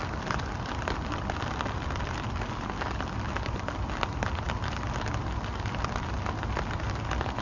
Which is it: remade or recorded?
recorded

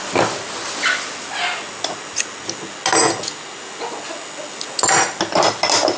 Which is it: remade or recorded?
recorded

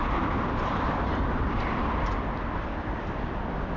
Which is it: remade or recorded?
recorded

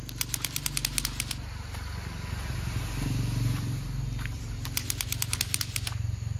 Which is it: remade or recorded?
recorded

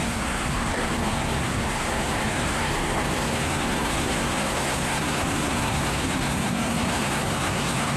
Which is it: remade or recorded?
remade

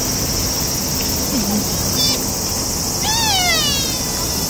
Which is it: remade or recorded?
recorded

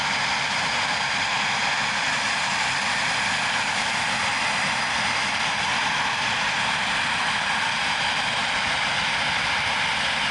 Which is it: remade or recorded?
recorded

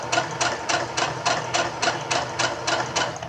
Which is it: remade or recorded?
recorded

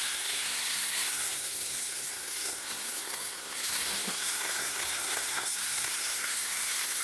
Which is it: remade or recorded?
remade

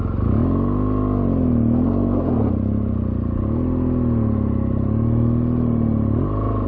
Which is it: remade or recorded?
recorded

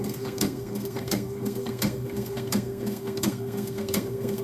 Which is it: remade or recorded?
remade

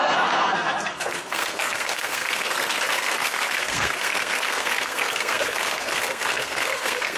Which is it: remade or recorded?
remade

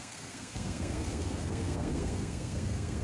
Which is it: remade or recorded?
remade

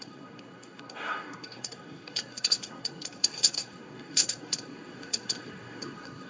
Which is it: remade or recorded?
remade